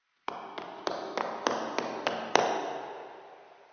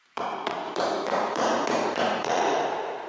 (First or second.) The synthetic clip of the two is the second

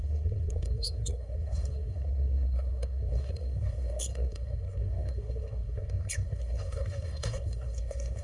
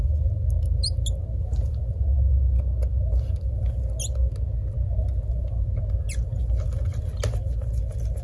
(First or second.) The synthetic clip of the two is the first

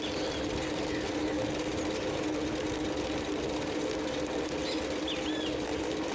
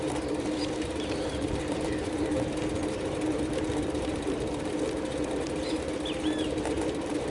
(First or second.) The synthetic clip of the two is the second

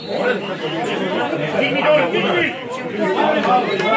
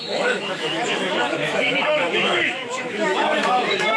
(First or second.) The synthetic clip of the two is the second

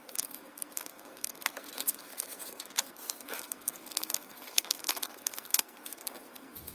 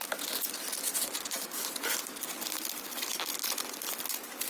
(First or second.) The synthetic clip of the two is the first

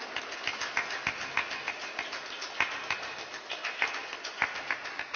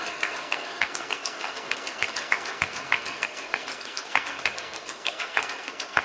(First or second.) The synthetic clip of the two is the second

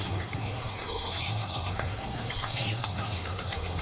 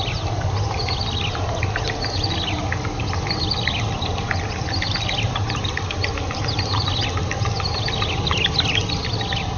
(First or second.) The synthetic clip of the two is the first